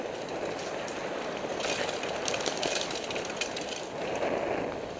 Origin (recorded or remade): recorded